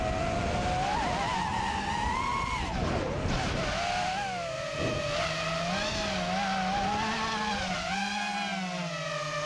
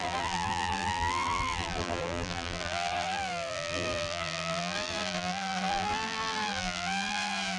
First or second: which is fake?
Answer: second